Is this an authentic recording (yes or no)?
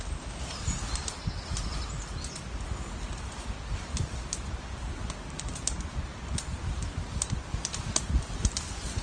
yes